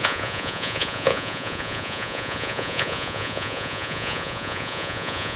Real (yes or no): no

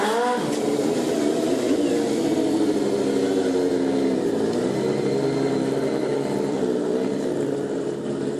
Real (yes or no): yes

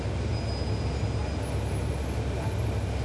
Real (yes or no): yes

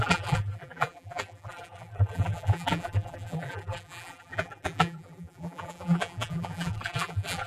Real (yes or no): no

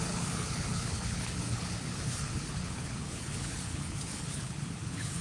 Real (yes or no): no